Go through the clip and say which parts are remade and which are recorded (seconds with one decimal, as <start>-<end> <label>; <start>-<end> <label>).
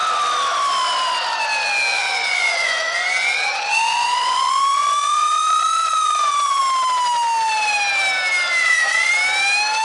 0.0-1.9 recorded; 1.9-6.6 remade; 6.6-8.6 recorded; 8.6-9.1 remade; 9.1-9.8 recorded